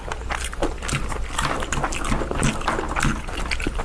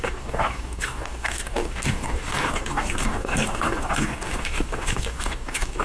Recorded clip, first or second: first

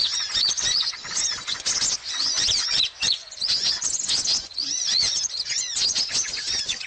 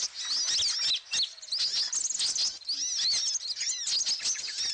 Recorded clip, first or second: second